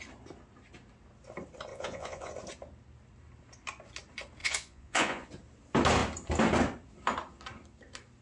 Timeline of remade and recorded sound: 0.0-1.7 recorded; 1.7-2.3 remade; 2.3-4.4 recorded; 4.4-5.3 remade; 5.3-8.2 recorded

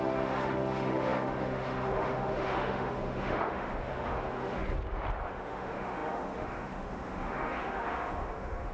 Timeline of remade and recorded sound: 0.0-4.6 remade; 4.6-5.2 recorded; 5.2-8.7 remade

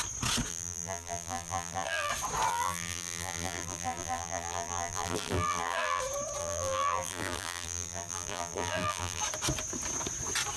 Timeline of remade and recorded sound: 0.0-0.5 recorded; 0.5-2.1 remade; 2.1-2.5 recorded; 2.5-6.0 remade; 6.0-6.4 recorded; 6.4-9.2 remade; 9.2-10.6 recorded

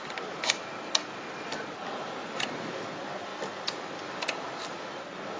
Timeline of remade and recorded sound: 0.0-3.3 recorded; 3.3-3.9 remade; 3.9-5.4 recorded

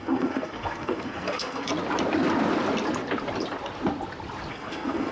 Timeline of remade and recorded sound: 0.0-1.7 remade; 1.7-4.5 recorded; 4.5-5.1 remade

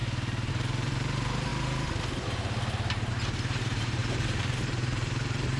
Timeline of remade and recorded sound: 0.0-0.5 recorded; 0.5-1.5 remade; 1.5-3.1 recorded; 3.1-5.6 remade

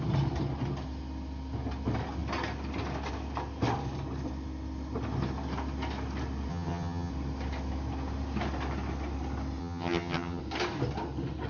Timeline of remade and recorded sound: 0.0-6.5 recorded; 6.5-7.1 remade; 7.1-9.6 recorded; 9.6-10.4 remade; 10.4-11.5 recorded

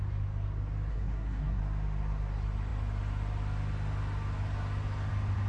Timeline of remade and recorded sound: 0.0-0.9 recorded; 0.9-1.6 remade; 1.6-5.5 recorded